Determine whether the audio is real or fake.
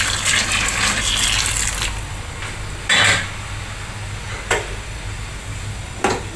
real